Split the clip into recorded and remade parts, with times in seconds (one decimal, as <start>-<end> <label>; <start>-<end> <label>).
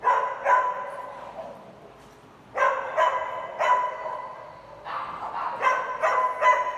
0.0-6.8 recorded